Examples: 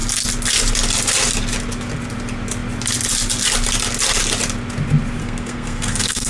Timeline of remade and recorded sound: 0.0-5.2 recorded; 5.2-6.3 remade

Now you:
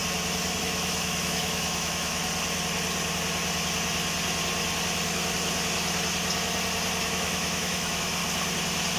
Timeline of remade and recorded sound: 0.0-0.6 recorded; 0.6-2.2 remade; 2.2-7.0 recorded; 7.0-8.2 remade; 8.2-9.0 recorded

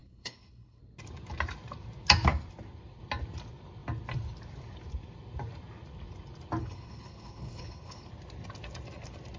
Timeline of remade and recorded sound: 0.0-0.8 remade; 0.8-6.6 recorded; 6.6-8.1 remade; 8.1-9.4 recorded

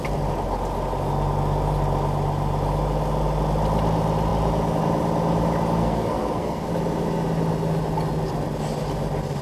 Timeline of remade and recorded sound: 0.0-5.8 recorded; 5.8-6.7 remade; 6.7-9.4 recorded